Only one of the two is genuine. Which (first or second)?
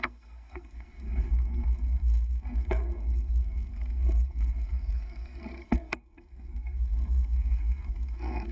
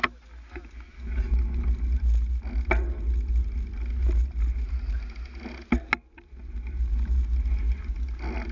second